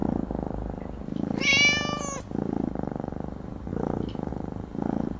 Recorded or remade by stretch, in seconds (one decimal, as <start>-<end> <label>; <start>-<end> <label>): 0.0-5.2 recorded